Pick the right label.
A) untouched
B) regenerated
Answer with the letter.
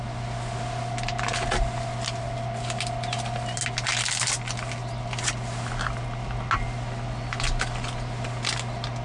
A